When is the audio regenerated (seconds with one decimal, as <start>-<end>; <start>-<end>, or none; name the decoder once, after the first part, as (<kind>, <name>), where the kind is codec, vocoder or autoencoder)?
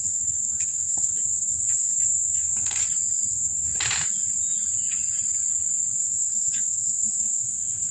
0.0-2.8 (codec, SNAC); 3.3-3.7; 6.0-7.9